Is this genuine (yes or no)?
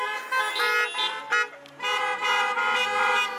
yes